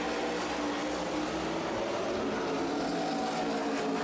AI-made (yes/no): no